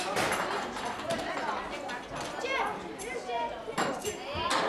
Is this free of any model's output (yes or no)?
yes